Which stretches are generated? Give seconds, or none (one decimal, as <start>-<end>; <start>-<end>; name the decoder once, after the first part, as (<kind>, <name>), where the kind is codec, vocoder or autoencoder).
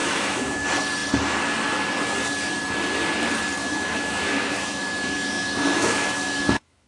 0.0-0.6 (autoencoder, DAC-VAE); 3.6-6.9